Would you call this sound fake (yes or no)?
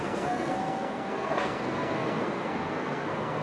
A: yes